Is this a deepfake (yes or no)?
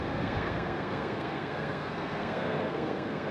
yes